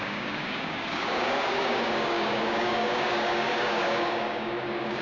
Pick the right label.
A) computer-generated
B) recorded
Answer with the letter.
A